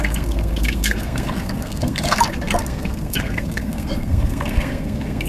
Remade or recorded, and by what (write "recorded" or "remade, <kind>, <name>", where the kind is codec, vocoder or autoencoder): remade, codec, SNAC